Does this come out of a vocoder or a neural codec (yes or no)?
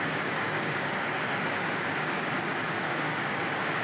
yes